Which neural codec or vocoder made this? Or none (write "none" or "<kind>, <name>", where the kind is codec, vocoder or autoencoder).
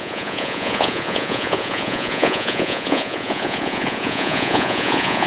vocoder, Vocos